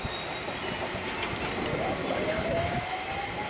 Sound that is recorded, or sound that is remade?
recorded